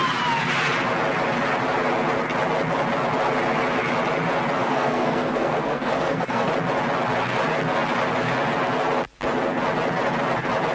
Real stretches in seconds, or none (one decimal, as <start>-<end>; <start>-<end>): 0.0-4.6; 6.5-10.7

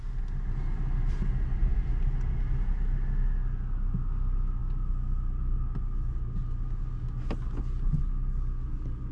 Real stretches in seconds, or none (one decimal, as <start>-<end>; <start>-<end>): 0.0-9.1

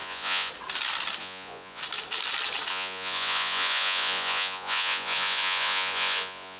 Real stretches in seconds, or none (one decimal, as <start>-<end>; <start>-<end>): 0.5-1.2; 1.8-2.7

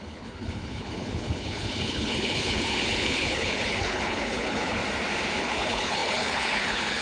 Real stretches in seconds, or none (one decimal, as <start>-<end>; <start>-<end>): 4.8-5.4

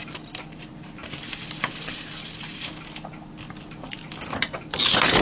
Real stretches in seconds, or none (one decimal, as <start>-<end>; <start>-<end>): 0.0-5.2